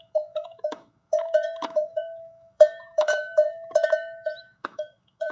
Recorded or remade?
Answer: remade